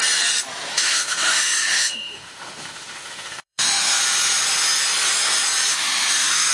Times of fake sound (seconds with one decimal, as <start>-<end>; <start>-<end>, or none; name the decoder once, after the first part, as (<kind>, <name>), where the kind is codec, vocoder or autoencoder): 0.7-4.0 (autoencoder, DAC-VAE); 5.7-6.5